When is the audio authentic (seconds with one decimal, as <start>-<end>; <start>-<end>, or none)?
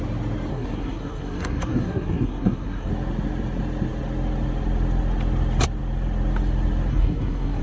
0.0-0.5; 2.9-6.9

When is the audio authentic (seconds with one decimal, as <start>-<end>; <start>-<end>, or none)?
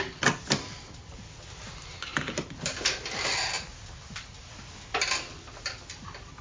0.0-6.4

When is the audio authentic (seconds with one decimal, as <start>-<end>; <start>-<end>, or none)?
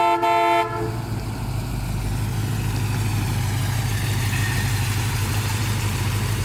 0.0-3.1; 6.0-6.4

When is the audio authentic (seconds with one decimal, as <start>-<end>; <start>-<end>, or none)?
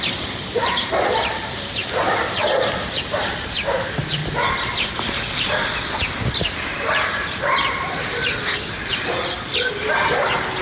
4.2-6.3; 9.2-10.6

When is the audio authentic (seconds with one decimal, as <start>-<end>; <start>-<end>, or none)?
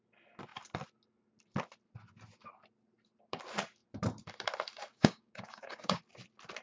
0.0-4.9; 6.0-6.6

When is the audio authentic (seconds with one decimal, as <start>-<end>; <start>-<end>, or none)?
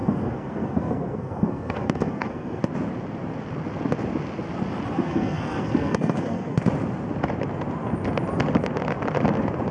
2.6-4.9; 6.6-9.7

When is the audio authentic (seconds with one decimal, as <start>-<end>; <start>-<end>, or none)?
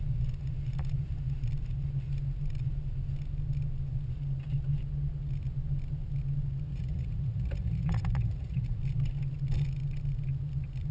0.0-6.7; 8.8-10.9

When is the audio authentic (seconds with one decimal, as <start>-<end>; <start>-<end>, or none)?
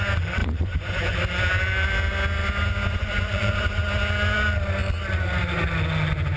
0.0-0.4; 1.3-3.0; 3.8-6.4